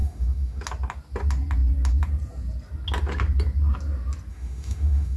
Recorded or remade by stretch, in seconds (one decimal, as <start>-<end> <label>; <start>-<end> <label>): 0.0-0.6 remade; 0.6-4.3 recorded; 4.3-5.2 remade

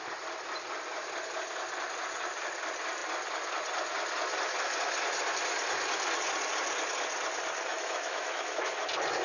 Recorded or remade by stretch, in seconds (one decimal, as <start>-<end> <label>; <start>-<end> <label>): 0.0-7.7 recorded; 7.7-8.7 remade; 8.7-9.2 recorded

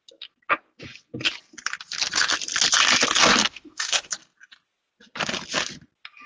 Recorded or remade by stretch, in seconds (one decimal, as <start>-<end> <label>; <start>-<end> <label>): 0.0-3.4 recorded; 3.4-4.1 remade; 4.1-6.3 recorded

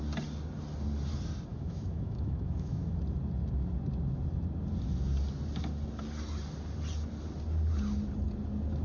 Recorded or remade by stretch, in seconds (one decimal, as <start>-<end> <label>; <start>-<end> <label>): 0.0-1.5 recorded; 1.5-2.9 remade; 2.9-8.8 recorded